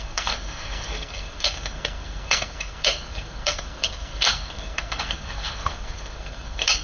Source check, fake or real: fake